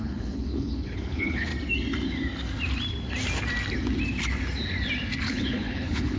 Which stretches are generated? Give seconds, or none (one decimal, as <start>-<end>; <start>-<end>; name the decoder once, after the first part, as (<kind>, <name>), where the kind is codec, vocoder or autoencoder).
0.0-1.5 (codec, HILCodec); 5.2-6.2